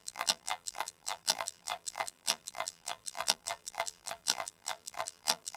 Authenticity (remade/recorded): remade